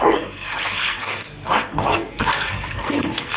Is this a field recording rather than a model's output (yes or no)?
no